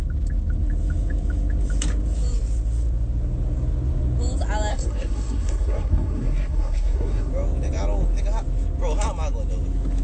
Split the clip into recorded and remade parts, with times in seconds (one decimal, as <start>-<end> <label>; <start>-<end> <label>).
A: 0.0-4.7 recorded; 4.7-7.3 remade; 7.3-10.0 recorded